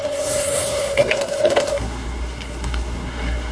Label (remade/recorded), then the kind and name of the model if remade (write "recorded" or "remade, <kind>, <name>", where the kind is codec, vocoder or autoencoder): remade, codec, SNAC